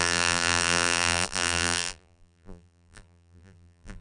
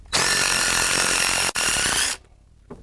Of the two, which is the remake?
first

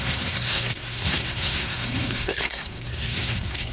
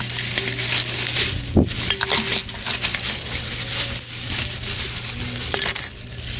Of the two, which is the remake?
first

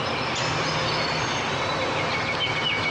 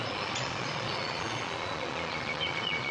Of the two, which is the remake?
second